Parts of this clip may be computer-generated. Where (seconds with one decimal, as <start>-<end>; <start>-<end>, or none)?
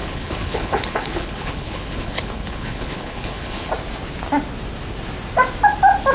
0.0-3.7